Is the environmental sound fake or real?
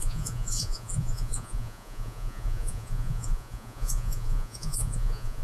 fake